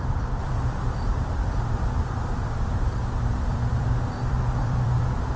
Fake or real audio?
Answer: fake